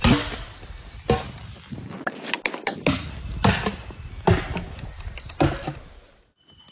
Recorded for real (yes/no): yes